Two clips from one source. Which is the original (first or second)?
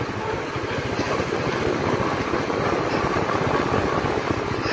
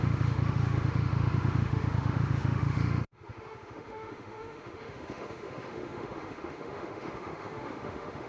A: first